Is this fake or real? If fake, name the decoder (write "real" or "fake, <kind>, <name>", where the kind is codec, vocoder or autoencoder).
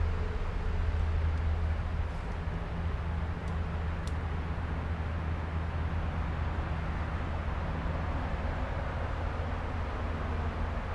real